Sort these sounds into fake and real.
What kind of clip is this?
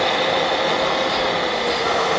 real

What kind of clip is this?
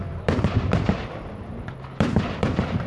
fake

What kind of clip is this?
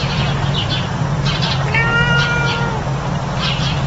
real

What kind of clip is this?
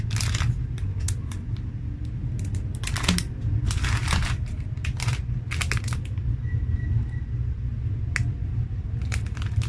real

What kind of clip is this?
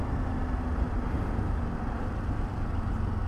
real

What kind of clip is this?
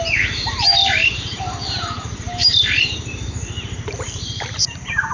fake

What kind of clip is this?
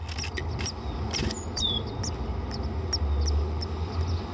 real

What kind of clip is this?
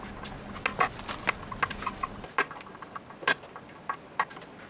real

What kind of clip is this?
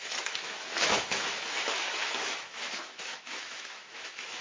fake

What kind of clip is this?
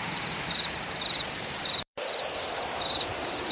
fake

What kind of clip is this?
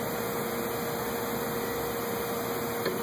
real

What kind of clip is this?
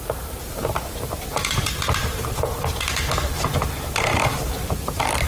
fake